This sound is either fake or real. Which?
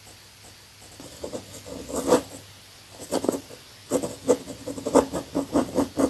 real